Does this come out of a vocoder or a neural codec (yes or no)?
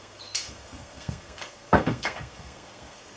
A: yes